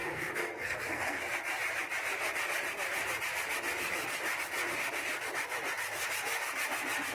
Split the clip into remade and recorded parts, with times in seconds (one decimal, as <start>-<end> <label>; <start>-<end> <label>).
0.0-1.2 remade; 1.2-7.1 recorded